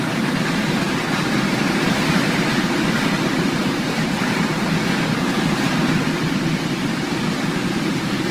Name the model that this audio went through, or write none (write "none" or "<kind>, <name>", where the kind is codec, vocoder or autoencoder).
vocoder, BigVGAN v2